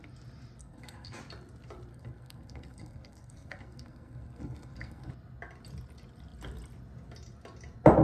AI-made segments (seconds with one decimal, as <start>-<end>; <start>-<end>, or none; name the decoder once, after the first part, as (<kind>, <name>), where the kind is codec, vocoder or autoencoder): 0.6-1.2 (codec, SNAC); 1.9-5.1